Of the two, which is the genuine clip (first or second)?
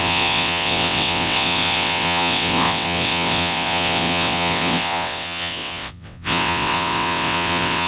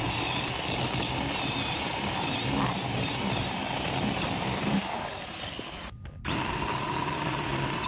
second